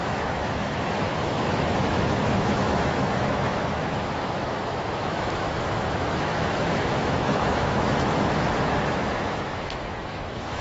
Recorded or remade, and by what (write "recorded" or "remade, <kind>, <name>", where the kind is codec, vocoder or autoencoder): remade, autoencoder, DAC-VAE